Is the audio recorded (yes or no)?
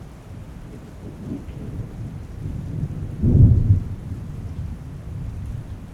no